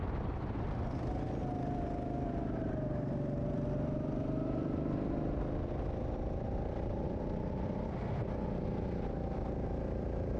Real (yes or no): yes